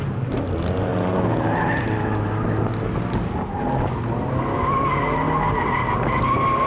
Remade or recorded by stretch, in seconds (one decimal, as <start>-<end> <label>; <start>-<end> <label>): 0.0-6.7 recorded